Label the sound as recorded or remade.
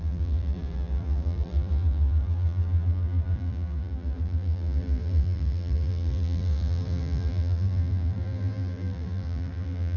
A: remade